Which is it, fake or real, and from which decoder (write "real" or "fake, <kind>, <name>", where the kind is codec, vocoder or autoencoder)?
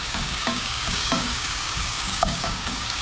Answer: fake, codec, DAC